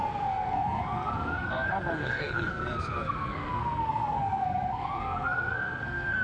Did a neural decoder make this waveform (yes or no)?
yes